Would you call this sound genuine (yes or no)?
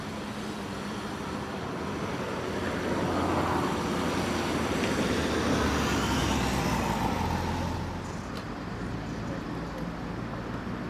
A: yes